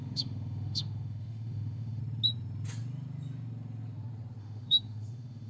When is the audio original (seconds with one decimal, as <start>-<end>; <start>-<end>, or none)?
2.0-4.4